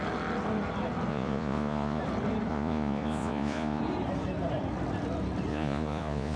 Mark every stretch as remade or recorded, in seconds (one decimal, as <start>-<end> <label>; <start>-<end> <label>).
0.0-1.1 recorded; 1.1-2.0 remade; 2.0-2.5 recorded; 2.5-3.8 remade; 3.8-5.5 recorded; 5.5-6.4 remade